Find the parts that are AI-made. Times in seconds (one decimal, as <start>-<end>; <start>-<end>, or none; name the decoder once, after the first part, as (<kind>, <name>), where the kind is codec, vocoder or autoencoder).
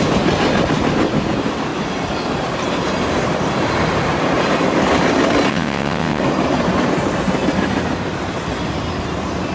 5.5-6.2 (vocoder, WaveNeXt)